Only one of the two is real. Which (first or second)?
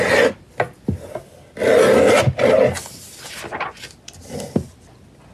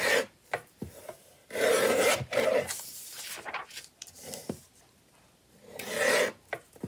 first